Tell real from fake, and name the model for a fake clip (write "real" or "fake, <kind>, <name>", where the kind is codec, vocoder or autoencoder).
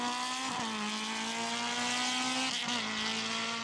real